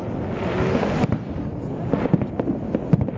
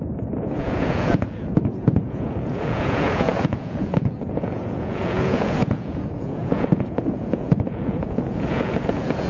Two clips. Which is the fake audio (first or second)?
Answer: second